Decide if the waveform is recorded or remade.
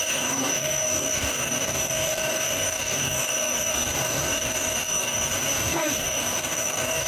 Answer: remade